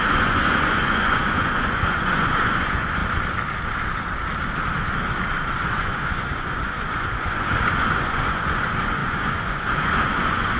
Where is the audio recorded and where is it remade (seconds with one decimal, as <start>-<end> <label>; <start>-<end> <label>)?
0.0-3.0 remade; 3.0-5.5 recorded; 5.5-10.6 remade

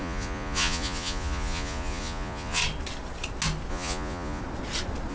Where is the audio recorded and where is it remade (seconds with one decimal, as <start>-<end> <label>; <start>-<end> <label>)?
0.0-2.6 remade; 2.6-3.7 recorded; 3.7-4.4 remade; 4.4-5.1 recorded

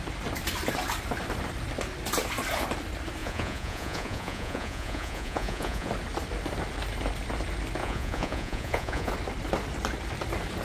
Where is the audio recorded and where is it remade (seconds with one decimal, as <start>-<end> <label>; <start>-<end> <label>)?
0.0-3.2 recorded; 3.2-5.9 remade; 5.9-7.8 recorded; 7.8-9.1 remade; 9.1-10.6 recorded

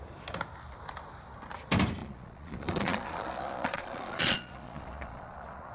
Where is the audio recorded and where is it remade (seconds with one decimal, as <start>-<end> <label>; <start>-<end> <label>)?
0.0-2.0 recorded; 2.0-5.7 remade